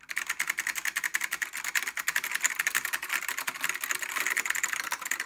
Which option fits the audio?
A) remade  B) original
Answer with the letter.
B